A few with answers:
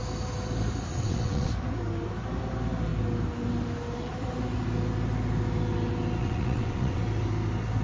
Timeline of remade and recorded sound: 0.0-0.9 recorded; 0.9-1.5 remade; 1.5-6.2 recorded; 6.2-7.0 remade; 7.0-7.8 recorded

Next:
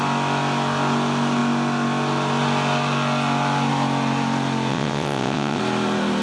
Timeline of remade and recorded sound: 0.0-4.7 recorded; 4.7-5.6 remade; 5.6-6.2 recorded

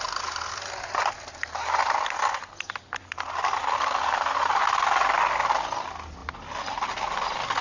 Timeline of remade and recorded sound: 0.0-7.6 recorded

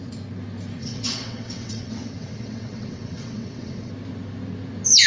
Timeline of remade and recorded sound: 0.0-0.8 recorded; 0.8-3.9 remade; 3.9-5.1 recorded